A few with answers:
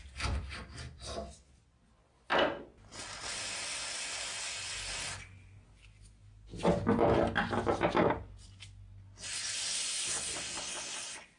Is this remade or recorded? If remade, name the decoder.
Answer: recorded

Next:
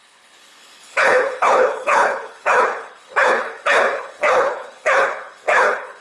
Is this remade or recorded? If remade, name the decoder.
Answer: remade, codec, HILCodec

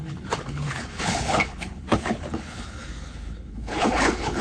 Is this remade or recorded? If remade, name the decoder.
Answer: remade, codec, HILCodec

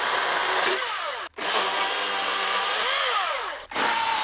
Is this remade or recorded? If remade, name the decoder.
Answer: recorded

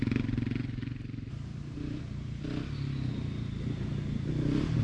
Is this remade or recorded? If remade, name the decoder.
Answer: recorded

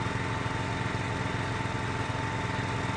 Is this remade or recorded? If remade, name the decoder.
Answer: recorded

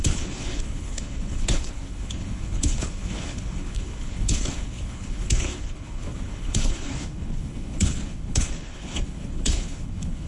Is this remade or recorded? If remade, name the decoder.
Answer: remade, codec, HILCodec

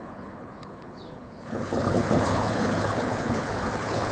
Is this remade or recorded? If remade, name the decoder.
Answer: remade, codec, HILCodec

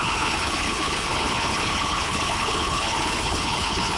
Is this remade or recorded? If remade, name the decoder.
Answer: remade, codec, HILCodec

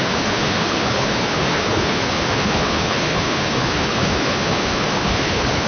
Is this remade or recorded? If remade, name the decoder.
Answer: remade, codec, HILCodec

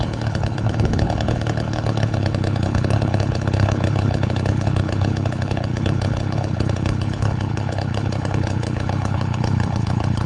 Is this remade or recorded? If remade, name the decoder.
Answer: remade, codec, HILCodec